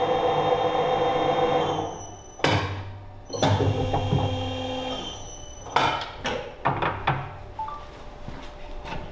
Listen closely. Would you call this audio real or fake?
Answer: real